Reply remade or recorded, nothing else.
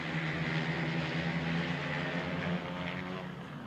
recorded